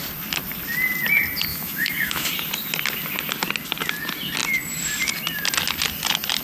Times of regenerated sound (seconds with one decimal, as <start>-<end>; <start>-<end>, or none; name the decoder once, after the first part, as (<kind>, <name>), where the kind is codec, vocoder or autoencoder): 1.5-2.3 (autoencoder, DAC-VAE)